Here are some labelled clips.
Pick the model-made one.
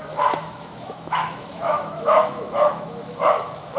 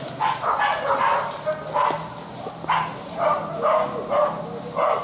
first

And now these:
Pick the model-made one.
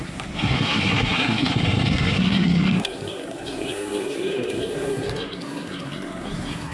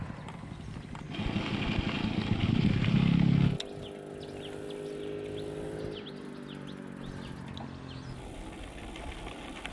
first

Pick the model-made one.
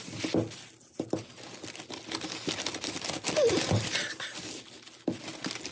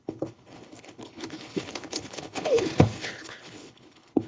second